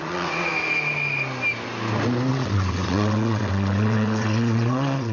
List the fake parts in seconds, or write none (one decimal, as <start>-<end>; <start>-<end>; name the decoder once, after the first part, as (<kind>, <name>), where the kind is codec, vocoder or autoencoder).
0.0-0.5 (vocoder, WaveNeXt); 2.3-5.1

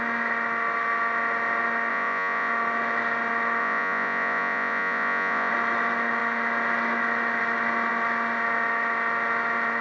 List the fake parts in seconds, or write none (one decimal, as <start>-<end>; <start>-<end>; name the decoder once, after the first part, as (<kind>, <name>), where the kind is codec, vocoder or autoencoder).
1.9-2.5 (vocoder, Vocos); 3.6-5.5